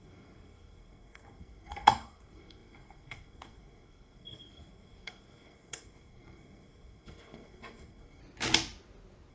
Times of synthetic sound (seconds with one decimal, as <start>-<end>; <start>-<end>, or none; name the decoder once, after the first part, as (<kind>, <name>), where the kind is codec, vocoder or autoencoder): 0.0-8.2 (codec, SNAC)